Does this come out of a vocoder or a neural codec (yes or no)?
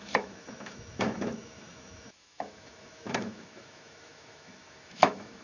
yes